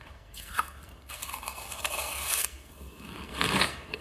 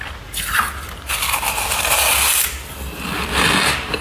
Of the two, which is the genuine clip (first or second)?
second